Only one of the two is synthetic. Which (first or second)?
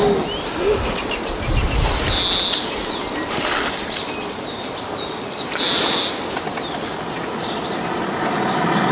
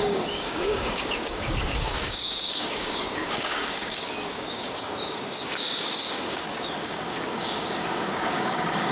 second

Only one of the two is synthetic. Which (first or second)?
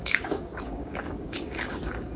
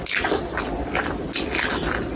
first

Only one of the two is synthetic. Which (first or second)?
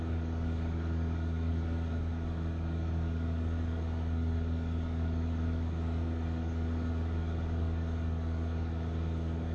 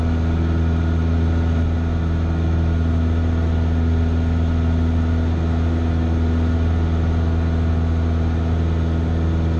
first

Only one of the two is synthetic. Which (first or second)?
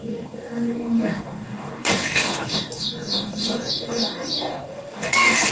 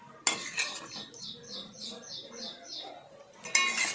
first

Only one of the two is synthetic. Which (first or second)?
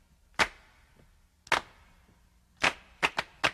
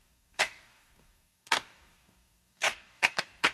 second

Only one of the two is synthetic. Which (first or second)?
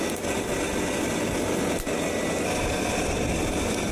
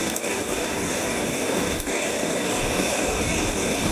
second